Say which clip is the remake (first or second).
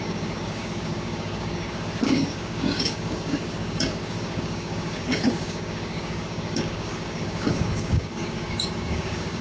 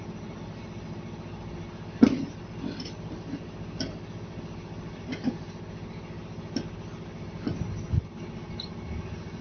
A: first